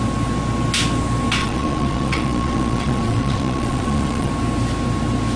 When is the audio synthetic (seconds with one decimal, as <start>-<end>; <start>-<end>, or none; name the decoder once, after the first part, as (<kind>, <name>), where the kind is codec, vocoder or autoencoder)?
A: 1.4-4.3 (vocoder, Vocos)